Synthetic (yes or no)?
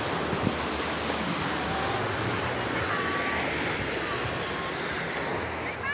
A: no